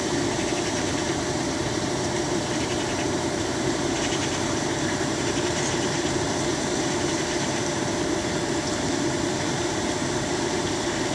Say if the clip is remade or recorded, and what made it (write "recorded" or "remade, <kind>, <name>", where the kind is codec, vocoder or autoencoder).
remade, vocoder, BigVGAN v2